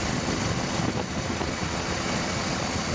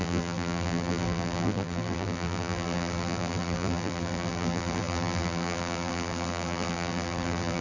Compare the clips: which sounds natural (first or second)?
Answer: first